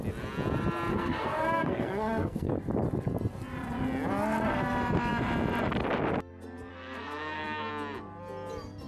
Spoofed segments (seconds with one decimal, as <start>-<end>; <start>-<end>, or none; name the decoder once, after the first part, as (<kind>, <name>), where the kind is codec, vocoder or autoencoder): 0.9-2.5 (codec, SNAC); 6.7-7.7